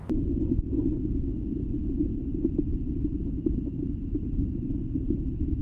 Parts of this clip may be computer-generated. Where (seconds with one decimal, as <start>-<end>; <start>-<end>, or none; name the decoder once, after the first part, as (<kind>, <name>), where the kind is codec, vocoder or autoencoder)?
2.3-4.5 (vocoder, BigVGAN v2)